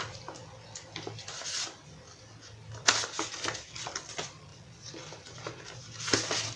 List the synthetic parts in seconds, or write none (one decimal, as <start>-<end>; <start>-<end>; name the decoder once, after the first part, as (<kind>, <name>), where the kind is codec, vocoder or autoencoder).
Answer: none